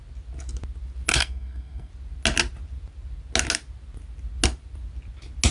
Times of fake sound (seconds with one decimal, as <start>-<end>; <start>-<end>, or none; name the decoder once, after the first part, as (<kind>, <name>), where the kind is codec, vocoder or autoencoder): 1.1-1.9 (codec, SNAC)